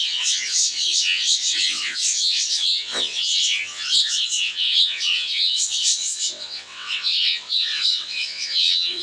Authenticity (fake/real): fake